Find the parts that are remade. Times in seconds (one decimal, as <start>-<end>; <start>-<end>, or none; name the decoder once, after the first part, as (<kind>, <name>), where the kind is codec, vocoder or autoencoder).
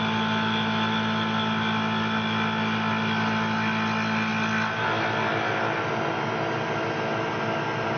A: none